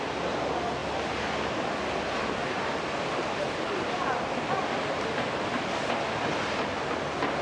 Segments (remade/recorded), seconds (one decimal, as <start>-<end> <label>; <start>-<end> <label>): 0.0-7.4 recorded